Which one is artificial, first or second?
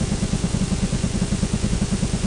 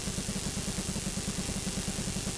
first